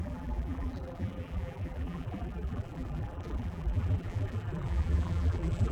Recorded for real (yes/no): no